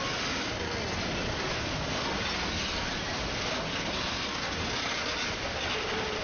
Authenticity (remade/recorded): recorded